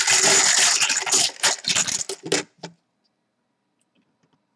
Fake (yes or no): no